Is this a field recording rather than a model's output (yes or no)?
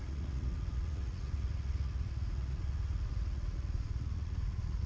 no